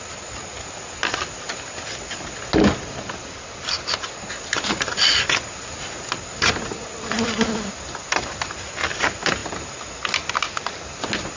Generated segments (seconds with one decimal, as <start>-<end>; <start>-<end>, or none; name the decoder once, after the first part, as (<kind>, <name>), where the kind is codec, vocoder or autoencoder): 3.2-6.4 (vocoder, BigVGAN v2); 6.9-8.5